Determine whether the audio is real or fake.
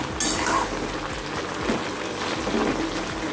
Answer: real